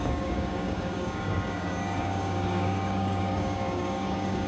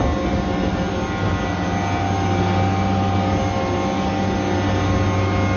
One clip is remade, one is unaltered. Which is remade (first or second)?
first